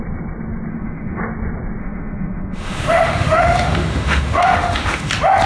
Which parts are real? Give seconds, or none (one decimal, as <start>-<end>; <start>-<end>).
0.0-0.7; 1.2-1.8; 5.1-5.5